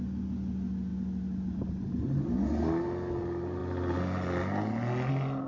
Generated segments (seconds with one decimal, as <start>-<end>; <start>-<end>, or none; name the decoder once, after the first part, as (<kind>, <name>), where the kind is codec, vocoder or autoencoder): none